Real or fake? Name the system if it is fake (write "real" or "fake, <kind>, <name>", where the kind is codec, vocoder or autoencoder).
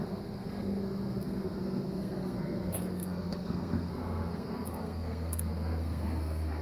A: fake, codec, SNAC